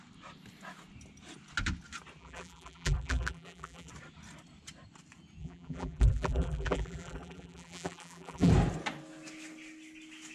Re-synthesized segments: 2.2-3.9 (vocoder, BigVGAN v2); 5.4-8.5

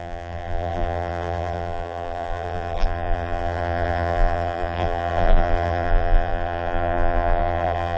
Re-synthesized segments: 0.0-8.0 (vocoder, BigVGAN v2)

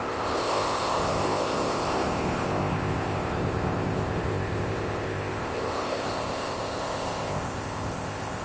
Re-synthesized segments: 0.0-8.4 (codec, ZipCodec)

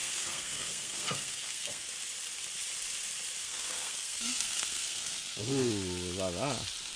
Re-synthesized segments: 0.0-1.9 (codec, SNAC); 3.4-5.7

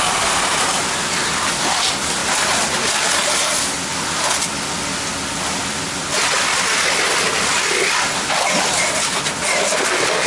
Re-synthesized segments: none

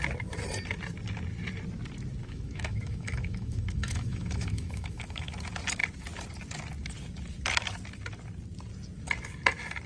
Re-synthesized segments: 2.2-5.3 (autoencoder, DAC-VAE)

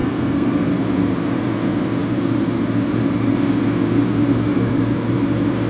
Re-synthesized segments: 0.0-0.8 (codec, SNAC)